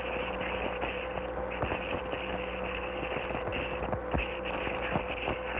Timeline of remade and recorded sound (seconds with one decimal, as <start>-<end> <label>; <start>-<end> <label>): 0.0-5.6 recorded